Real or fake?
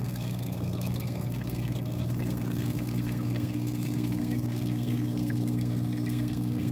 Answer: fake